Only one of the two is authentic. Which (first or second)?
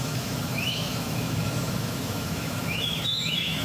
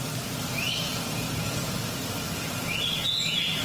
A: second